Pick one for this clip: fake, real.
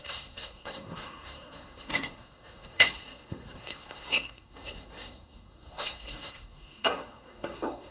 fake